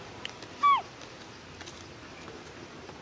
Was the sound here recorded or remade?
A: recorded